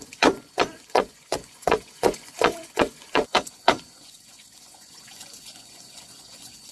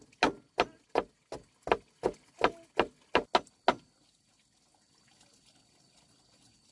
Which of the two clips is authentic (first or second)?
second